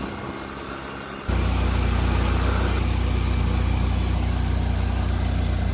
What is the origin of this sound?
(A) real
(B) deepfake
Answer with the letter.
A